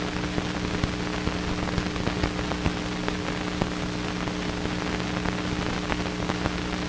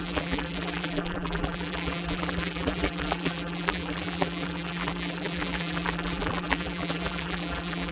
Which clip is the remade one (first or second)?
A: second